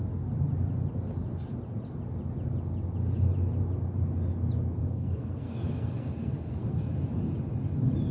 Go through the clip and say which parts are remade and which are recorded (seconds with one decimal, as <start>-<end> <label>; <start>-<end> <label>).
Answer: 0.0-4.8 recorded; 4.8-6.8 remade; 6.8-8.1 recorded